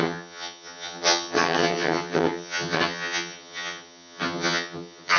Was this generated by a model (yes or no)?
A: yes